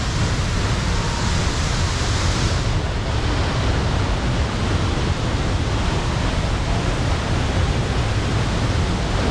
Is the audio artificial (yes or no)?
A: no